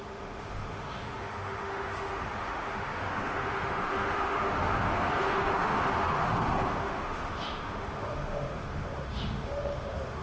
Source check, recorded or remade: remade